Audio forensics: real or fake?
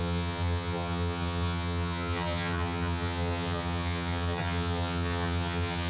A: fake